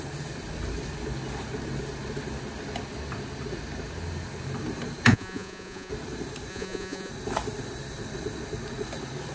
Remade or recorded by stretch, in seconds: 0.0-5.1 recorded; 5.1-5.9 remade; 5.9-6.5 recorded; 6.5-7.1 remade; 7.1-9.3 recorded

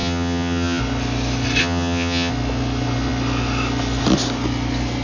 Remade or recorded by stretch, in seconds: 0.0-0.8 remade; 0.8-1.6 recorded; 1.6-2.3 remade; 2.3-5.0 recorded

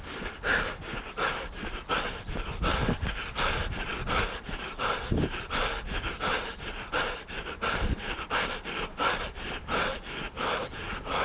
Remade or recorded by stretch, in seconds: 0.0-11.2 recorded

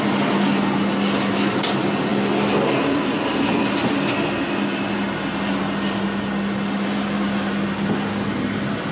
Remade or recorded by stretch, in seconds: 0.0-8.9 recorded

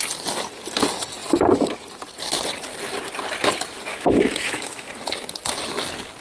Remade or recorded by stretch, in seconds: 0.0-3.9 recorded; 3.9-4.9 remade; 4.9-6.2 recorded

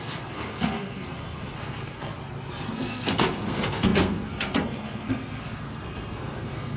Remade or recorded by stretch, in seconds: 0.0-2.1 remade; 2.1-2.7 recorded; 2.7-6.8 remade